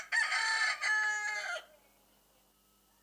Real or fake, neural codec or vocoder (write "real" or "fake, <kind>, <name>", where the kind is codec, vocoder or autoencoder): real